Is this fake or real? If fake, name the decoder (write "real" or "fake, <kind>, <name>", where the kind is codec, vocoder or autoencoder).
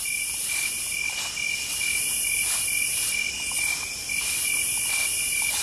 real